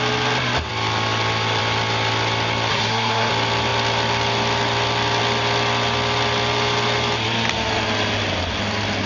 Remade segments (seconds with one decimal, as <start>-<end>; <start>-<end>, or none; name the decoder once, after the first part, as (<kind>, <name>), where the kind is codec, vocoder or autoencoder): 2.7-3.3 (codec, SNAC)